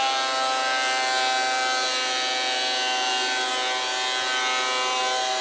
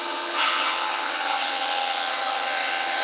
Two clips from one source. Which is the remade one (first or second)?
second